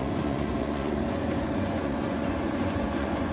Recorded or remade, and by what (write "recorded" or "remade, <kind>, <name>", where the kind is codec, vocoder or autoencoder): remade, vocoder, Vocos